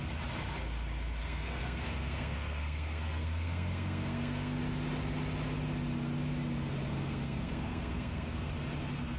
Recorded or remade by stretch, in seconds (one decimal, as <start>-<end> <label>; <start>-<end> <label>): 0.0-1.2 recorded; 1.2-4.6 remade; 4.6-6.9 recorded; 6.9-8.5 remade; 8.5-9.2 recorded